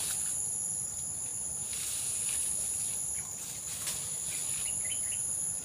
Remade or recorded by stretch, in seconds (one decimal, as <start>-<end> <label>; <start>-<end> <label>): 0.0-5.6 recorded